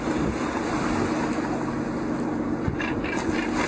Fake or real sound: real